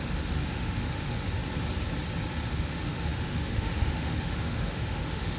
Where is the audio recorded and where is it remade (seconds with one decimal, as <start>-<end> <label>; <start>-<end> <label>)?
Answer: 0.0-1.4 remade; 1.4-2.5 recorded; 2.5-5.4 remade

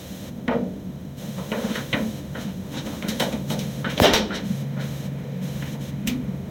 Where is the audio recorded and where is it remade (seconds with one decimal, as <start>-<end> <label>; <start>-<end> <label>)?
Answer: 0.0-6.5 remade